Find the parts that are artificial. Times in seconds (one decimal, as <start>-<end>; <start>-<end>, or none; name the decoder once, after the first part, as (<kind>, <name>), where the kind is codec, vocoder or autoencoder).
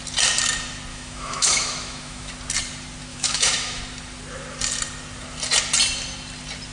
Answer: 0.9-2.3 (autoencoder, DAC-VAE); 3.1-3.8